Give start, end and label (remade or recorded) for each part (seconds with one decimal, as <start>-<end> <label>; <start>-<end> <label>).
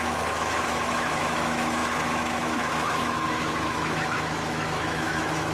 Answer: 0.0-5.5 remade